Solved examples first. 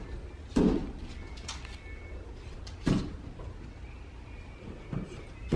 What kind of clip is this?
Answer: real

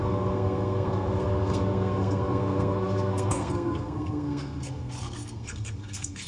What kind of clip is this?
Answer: fake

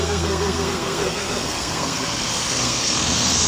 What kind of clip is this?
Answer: fake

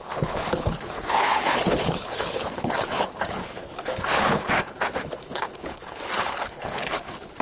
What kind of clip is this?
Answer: fake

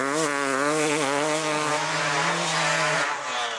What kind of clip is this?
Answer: real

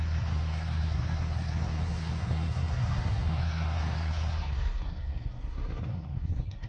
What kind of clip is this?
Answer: fake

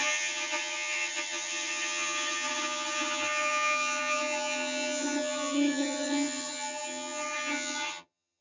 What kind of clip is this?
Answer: fake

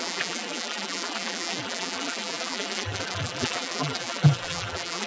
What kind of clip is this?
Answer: fake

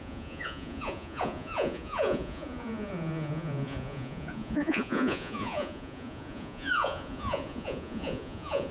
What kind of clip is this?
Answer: fake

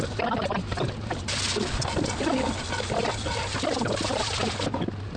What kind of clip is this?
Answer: real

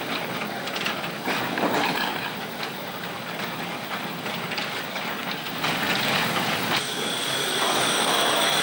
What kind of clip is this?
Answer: fake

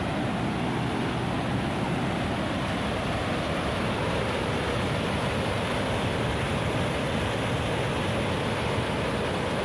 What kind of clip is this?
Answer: real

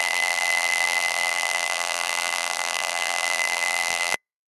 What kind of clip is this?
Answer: fake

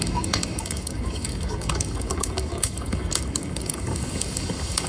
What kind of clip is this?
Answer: fake